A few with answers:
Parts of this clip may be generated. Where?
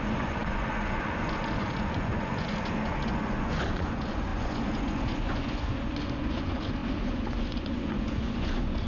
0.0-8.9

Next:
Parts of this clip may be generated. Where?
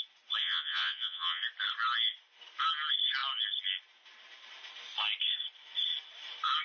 0.4-1.4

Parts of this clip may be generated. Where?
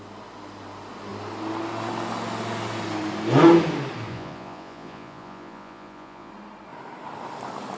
4.1-6.3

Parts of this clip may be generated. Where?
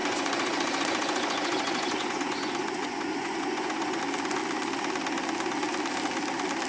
0.0-4.0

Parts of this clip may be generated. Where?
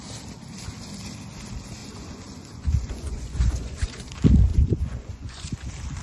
1.8-4.1; 4.5-5.5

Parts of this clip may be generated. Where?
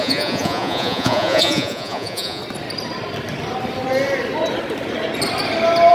0.0-2.4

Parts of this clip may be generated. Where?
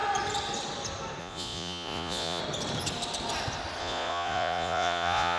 1.2-2.4; 3.8-5.4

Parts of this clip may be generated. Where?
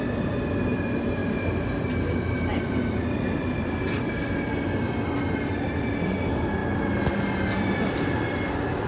none